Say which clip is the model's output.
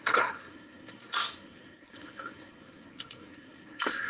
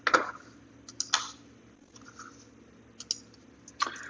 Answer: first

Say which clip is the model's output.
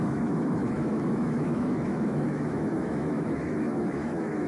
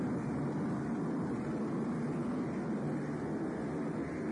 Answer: first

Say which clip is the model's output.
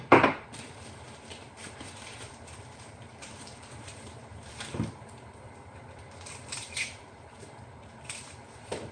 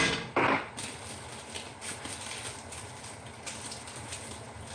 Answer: first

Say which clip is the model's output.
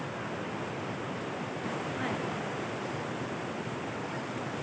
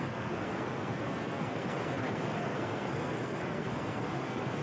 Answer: second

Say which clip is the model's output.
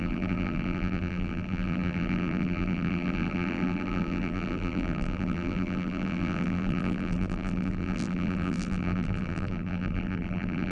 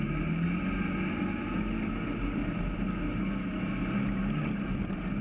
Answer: first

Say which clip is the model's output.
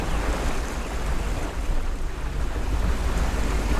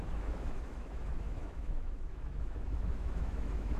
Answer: second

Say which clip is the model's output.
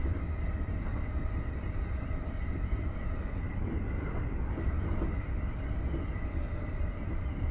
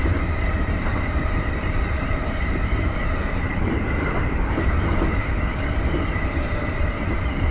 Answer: second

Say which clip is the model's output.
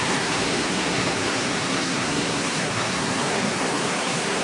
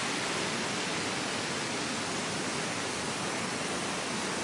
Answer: first